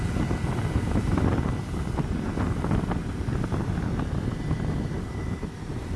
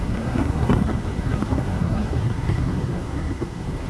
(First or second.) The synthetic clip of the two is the second